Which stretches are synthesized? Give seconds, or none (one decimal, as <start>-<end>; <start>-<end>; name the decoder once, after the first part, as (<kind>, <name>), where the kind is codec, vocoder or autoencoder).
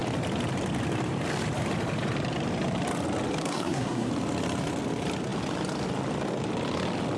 3.4-4.1 (codec, SNAC)